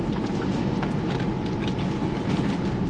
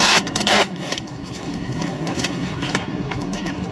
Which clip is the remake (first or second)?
second